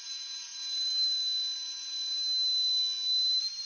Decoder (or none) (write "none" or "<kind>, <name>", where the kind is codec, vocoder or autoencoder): none